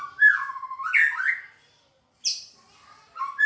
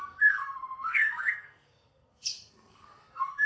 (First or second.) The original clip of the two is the first